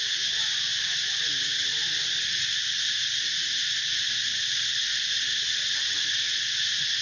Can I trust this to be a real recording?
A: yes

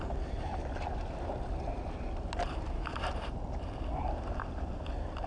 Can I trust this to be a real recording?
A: yes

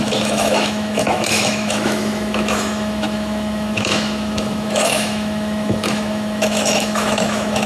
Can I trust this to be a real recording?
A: no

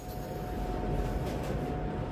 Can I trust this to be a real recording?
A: yes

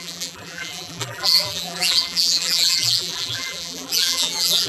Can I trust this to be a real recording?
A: no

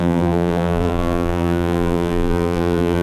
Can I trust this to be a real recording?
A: no